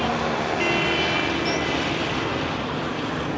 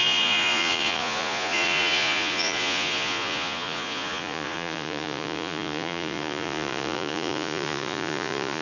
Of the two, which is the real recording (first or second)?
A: first